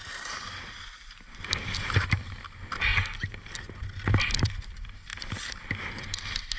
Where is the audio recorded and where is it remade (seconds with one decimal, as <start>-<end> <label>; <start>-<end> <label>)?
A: 0.0-2.9 remade; 2.9-3.8 recorded; 3.8-5.1 remade; 5.1-5.9 recorded; 5.9-6.6 remade

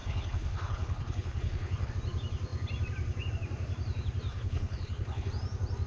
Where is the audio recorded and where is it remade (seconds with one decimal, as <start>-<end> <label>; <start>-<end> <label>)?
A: 0.0-1.9 remade; 1.9-4.3 recorded; 4.3-5.3 remade; 5.3-5.9 recorded

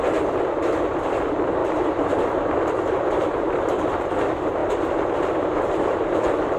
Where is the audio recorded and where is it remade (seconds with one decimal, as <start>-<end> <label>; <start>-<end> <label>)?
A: 0.0-1.6 recorded; 1.6-4.0 remade; 4.0-4.6 recorded; 4.6-6.6 remade

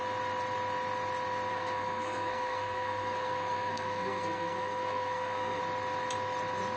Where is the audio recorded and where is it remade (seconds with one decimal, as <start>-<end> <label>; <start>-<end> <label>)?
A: 0.0-1.5 recorded; 1.5-5.6 remade; 5.6-6.8 recorded